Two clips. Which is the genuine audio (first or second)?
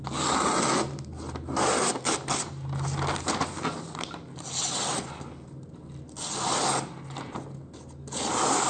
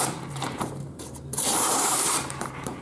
first